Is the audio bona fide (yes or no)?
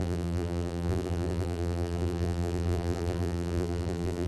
no